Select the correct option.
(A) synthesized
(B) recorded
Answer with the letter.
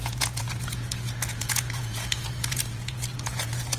A